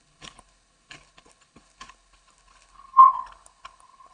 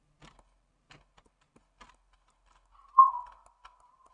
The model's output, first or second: first